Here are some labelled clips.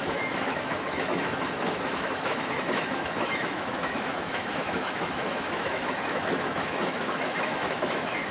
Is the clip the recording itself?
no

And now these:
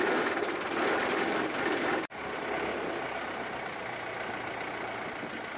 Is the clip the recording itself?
yes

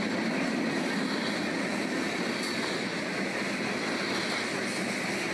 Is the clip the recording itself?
yes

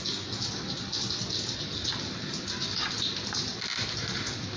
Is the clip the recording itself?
yes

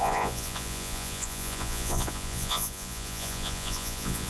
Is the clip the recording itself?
no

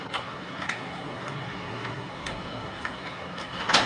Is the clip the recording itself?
no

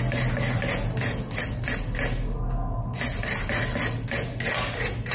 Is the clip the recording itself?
yes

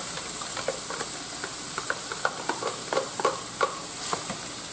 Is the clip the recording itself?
yes